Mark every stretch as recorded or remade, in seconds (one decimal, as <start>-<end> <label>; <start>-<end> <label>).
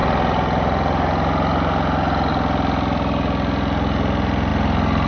0.0-5.1 recorded